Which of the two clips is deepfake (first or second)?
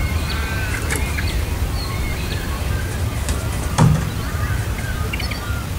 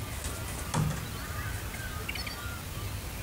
first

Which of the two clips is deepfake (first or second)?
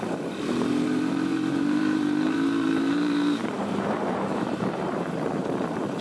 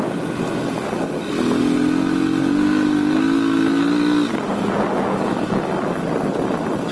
first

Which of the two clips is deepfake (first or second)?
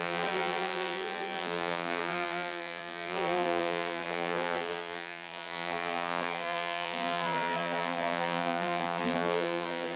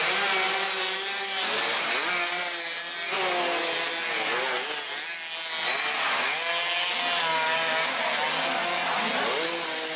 first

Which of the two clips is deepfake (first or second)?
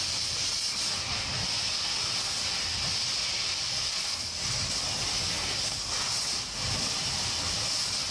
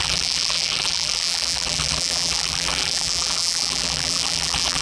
second